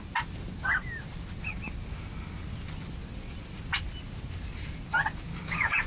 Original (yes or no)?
yes